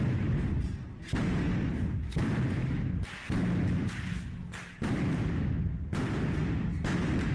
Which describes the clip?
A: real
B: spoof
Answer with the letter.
A